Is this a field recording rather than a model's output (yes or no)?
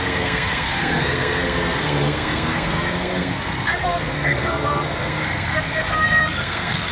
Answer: no